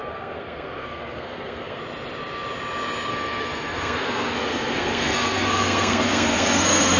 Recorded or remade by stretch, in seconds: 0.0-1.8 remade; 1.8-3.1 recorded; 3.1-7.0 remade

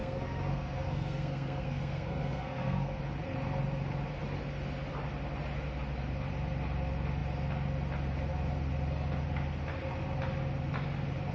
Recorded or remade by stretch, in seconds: 0.0-3.0 remade; 3.0-11.3 recorded

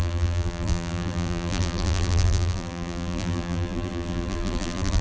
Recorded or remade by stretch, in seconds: 0.0-5.0 remade